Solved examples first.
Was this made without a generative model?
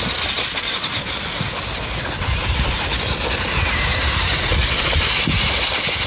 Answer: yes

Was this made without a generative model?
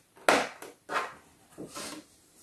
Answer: yes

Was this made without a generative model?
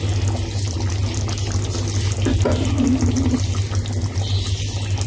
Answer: yes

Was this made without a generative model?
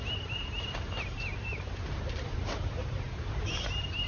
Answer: no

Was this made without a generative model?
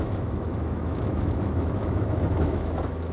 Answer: no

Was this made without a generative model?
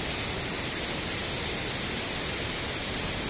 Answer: yes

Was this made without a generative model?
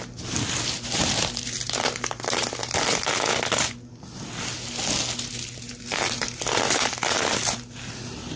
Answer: yes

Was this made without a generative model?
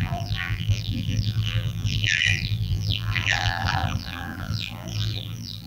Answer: no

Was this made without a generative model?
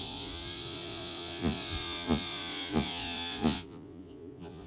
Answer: no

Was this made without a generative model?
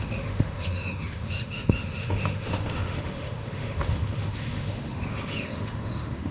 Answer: no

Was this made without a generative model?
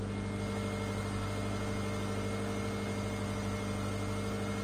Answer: yes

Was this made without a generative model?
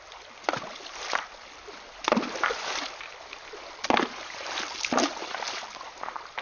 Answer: yes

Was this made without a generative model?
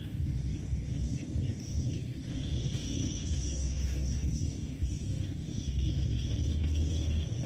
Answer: no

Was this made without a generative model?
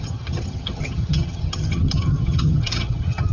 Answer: no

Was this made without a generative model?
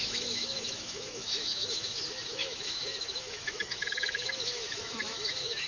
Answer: no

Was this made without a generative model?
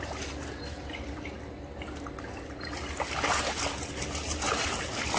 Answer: yes